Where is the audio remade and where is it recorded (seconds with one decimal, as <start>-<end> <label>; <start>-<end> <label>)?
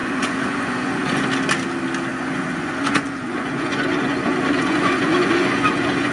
0.0-1.2 remade; 1.2-2.1 recorded; 2.1-6.1 remade